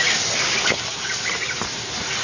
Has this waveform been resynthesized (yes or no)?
no